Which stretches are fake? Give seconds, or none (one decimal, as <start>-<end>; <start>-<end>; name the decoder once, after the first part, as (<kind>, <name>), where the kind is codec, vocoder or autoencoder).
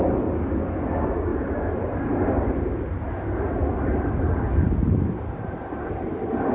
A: 1.3-2.7 (vocoder, BigVGAN v2); 3.9-6.5